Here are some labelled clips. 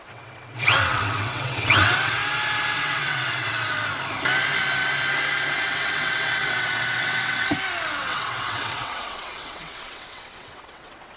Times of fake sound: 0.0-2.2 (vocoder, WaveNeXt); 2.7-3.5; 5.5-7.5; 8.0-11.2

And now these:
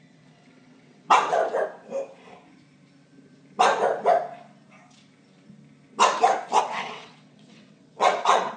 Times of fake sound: 0.0-1.4 (vocoder, WaveNeXt); 6.6-8.6

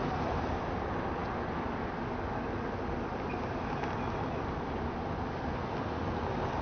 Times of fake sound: none

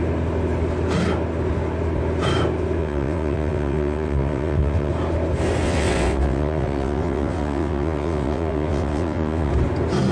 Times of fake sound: 2.8-4.9 (vocoder, WaveNeXt); 5.6-9.5